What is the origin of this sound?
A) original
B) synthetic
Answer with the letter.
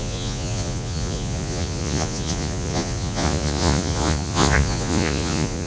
B